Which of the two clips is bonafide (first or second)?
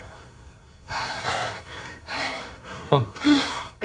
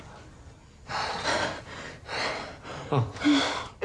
second